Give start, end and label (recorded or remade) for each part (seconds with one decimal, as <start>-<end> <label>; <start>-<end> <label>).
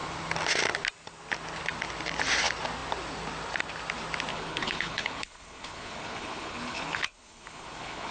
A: 0.0-4.3 recorded; 4.3-8.1 remade